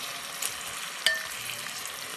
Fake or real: real